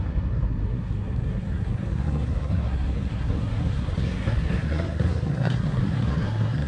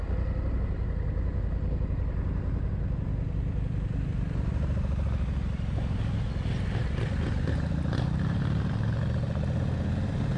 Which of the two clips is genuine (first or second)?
second